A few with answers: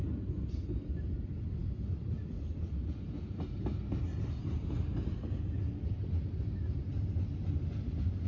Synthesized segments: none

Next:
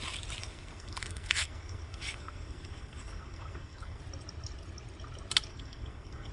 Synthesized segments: 0.4-4.0 (codec, SNAC); 5.5-6.3

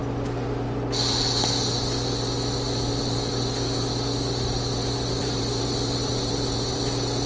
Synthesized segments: 5.2-6.8 (vocoder, BigVGAN v2)